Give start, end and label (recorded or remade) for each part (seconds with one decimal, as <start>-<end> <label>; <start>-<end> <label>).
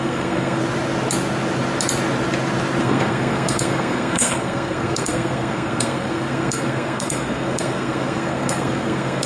0.0-0.6 remade; 0.6-2.8 recorded; 2.8-9.3 remade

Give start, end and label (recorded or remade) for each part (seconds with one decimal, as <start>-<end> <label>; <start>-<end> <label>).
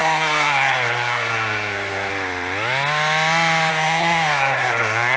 0.0-2.1 remade; 2.1-3.7 recorded; 3.7-5.2 remade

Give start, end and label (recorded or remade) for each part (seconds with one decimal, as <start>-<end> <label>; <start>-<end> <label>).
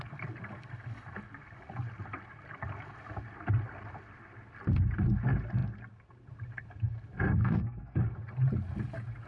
0.0-7.4 recorded; 7.4-8.0 remade; 8.0-9.3 recorded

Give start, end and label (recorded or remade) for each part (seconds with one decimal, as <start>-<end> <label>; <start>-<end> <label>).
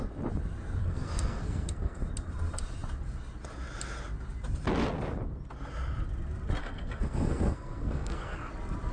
0.0-0.8 recorded; 0.8-2.0 remade; 2.0-6.6 recorded; 6.6-8.5 remade; 8.5-8.9 recorded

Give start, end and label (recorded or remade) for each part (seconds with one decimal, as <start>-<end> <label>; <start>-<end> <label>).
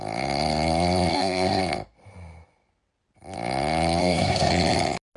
0.0-1.1 recorded; 1.1-1.6 remade; 1.6-4.0 recorded; 4.0-4.5 remade; 4.5-5.2 recorded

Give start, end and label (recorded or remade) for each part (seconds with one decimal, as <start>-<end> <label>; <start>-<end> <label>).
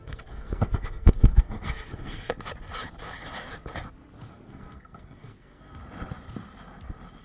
0.0-2.3 remade; 2.3-4.3 recorded; 4.3-5.8 remade; 5.8-7.2 recorded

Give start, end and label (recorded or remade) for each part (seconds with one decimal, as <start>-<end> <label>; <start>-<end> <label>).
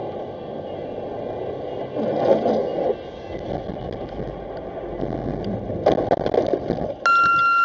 0.0-7.6 recorded